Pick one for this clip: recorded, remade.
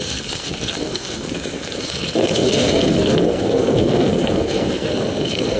remade